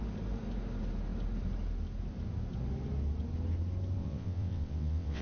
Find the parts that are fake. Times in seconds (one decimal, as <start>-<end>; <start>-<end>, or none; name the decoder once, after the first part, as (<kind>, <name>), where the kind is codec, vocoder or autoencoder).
4.0-5.2 (vocoder, WaveNeXt)